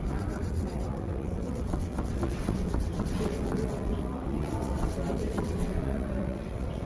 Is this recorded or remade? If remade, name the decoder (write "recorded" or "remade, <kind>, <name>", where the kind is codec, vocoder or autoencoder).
remade, vocoder, WaveNeXt